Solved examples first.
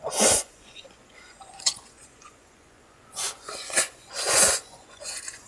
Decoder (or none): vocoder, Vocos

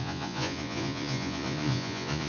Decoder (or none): vocoder, Vocos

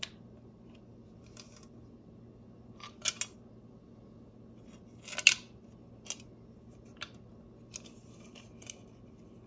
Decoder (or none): none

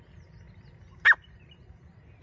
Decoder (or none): none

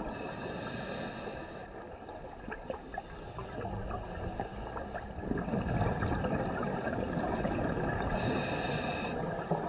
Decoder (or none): none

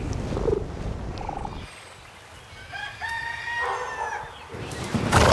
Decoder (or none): none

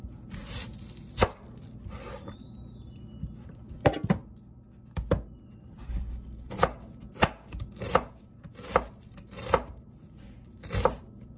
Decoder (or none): none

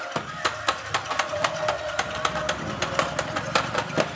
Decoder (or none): none